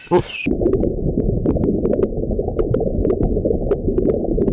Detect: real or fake real